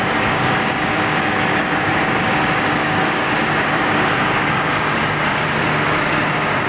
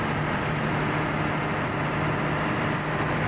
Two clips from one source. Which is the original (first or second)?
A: second